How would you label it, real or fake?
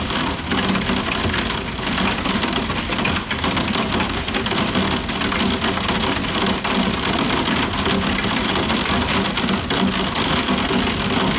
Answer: real